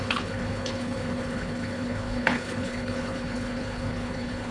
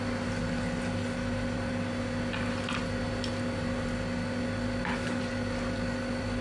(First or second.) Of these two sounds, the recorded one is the second